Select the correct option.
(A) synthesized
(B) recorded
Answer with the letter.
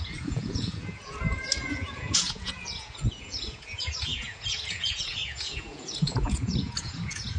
A